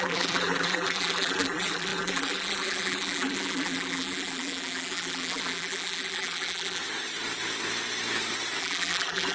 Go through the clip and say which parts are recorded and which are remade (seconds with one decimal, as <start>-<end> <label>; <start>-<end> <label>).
0.0-6.8 remade; 6.8-8.6 recorded; 8.6-9.3 remade